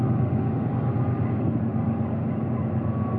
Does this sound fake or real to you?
real